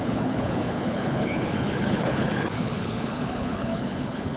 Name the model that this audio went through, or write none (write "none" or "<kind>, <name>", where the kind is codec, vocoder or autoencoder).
codec, HILCodec